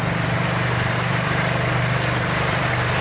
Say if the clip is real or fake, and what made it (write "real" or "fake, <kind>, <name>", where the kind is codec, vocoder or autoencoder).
fake, vocoder, BigVGAN v2